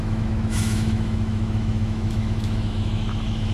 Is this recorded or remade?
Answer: remade